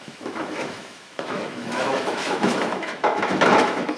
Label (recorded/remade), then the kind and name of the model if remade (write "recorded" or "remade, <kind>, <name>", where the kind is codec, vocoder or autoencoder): remade, autoencoder, DAC-VAE